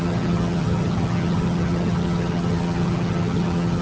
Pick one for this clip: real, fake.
fake